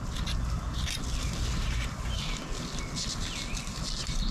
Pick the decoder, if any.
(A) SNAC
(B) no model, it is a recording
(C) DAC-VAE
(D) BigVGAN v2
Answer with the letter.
B